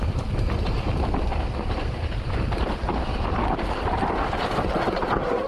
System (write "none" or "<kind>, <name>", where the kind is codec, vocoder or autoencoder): none